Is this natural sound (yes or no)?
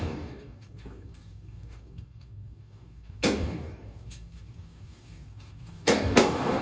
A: no